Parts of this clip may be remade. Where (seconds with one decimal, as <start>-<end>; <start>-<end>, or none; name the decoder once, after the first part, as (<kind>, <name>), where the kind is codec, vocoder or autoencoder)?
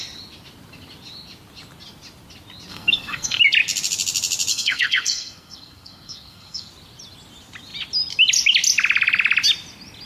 2.7-3.4 (codec, SNAC); 4.5-6.7